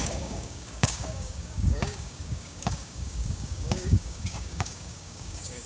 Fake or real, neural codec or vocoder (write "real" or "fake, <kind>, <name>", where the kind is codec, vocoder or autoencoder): fake, codec, DAC